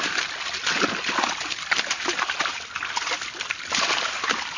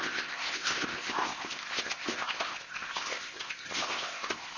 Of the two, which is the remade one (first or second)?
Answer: second